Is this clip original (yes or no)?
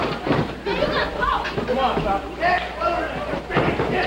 yes